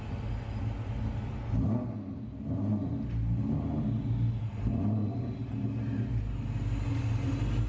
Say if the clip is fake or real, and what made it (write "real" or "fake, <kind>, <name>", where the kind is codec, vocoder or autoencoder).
real